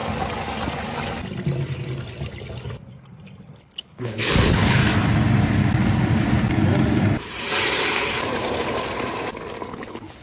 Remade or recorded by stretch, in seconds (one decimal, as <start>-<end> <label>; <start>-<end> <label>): 0.0-3.6 recorded; 3.6-4.8 remade; 4.8-9.7 recorded; 9.7-10.2 remade